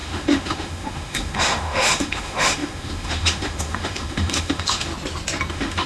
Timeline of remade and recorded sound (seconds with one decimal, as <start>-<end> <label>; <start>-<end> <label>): 0.0-4.9 remade; 4.9-5.5 recorded; 5.5-5.9 remade

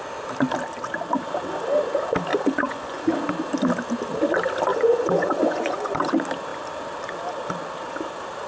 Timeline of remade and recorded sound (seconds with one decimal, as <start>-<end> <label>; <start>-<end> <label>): 0.0-2.3 recorded; 2.3-3.0 remade; 3.0-4.7 recorded; 4.7-6.1 remade; 6.1-8.5 recorded

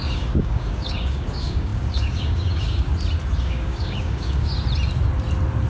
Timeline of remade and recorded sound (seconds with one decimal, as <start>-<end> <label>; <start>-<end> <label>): 0.0-2.9 remade; 2.9-3.4 recorded; 3.4-4.5 remade; 4.5-5.7 recorded

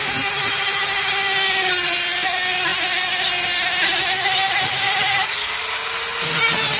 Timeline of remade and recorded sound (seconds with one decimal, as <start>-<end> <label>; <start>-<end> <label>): 0.0-6.8 recorded

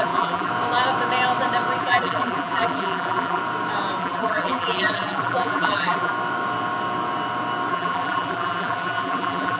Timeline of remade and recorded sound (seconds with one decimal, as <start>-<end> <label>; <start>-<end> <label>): 0.0-0.5 remade; 0.5-1.8 recorded; 1.8-3.4 remade; 3.4-4.0 recorded; 4.0-6.1 remade; 6.1-7.7 recorded; 7.7-9.6 remade

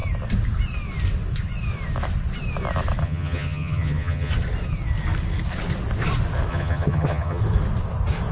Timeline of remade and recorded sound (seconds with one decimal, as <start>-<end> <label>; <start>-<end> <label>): 0.0-3.0 recorded; 3.0-4.3 remade; 4.3-6.5 recorded; 6.5-7.4 remade; 7.4-8.3 recorded

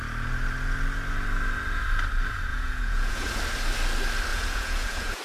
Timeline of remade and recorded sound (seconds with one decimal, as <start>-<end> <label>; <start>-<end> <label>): 0.0-2.5 recorded; 2.5-3.4 remade; 3.4-4.3 recorded; 4.3-5.2 remade

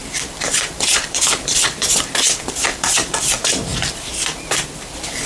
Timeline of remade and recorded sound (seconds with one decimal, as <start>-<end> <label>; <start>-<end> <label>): 0.0-5.3 remade